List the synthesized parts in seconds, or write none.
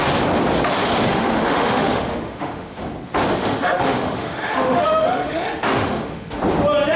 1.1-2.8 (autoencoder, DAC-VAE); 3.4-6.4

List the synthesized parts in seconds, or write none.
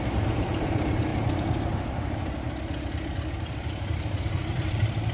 0.0-1.1 (vocoder, BigVGAN v2); 4.2-5.1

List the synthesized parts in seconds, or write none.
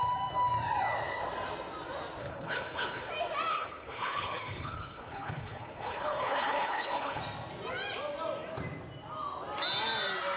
2.2-3.1 (codec, HILCodec); 3.5-7.2